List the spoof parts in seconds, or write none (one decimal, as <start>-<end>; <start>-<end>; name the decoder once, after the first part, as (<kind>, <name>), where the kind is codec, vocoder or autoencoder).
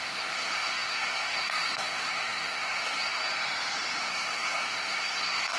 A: 0.0-3.2 (codec, SNAC); 4.0-5.6